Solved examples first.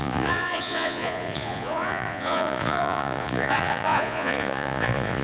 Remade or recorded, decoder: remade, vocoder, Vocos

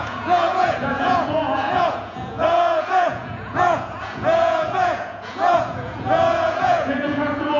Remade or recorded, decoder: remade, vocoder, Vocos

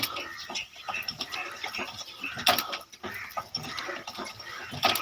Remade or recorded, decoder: recorded